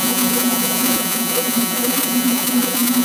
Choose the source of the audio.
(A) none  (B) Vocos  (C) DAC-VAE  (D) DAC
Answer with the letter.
B